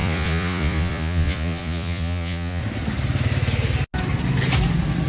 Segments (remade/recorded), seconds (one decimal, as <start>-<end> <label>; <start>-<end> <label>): 0.0-2.6 remade; 2.6-5.1 recorded